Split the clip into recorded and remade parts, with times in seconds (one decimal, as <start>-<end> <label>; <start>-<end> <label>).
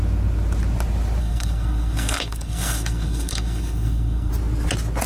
0.0-1.2 recorded; 1.2-4.3 remade; 4.3-5.1 recorded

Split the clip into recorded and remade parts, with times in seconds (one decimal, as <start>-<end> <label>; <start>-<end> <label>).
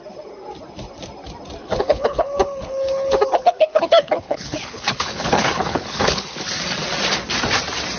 0.0-1.6 recorded; 1.6-6.4 remade; 6.4-8.0 recorded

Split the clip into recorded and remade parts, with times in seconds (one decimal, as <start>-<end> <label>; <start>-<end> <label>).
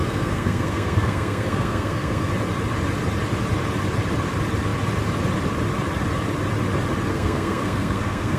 0.0-2.3 remade; 2.3-7.1 recorded; 7.1-8.4 remade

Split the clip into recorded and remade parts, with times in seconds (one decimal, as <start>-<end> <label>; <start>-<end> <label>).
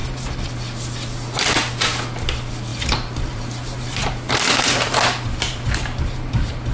0.0-2.7 recorded; 2.7-6.7 remade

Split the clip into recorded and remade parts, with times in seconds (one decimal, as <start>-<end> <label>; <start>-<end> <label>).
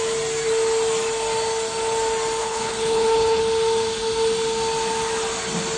0.0-2.4 recorded; 2.4-3.4 remade; 3.4-5.8 recorded